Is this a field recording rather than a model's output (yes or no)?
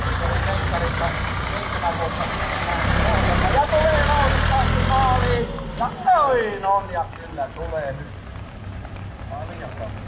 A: yes